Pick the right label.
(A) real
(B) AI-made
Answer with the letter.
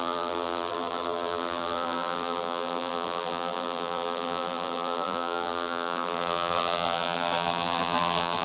B